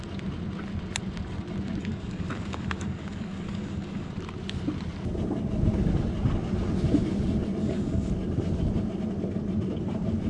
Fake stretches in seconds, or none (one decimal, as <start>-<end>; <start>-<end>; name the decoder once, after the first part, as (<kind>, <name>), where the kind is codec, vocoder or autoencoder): 1.8-4.1 (codec, DAC); 7.6-8.1